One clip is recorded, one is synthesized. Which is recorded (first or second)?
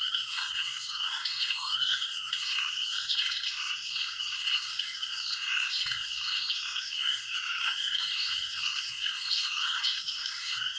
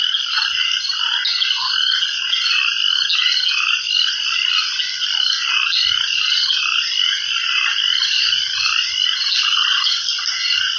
second